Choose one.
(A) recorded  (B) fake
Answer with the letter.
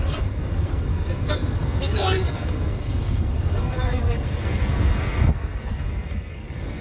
B